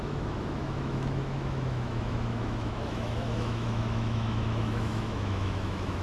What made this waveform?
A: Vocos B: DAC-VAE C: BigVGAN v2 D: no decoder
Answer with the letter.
B